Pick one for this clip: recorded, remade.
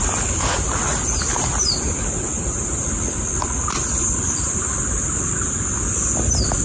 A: recorded